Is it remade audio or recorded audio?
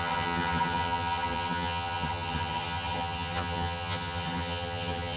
remade